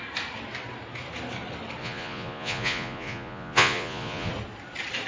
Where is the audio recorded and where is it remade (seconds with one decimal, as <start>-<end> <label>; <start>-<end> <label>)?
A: 0.0-1.8 recorded; 1.8-4.3 remade; 4.3-5.1 recorded